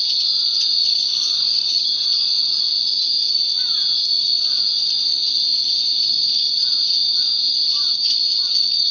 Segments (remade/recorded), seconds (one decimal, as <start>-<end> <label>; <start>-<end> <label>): 0.0-0.9 recorded; 0.9-1.9 remade; 1.9-8.9 recorded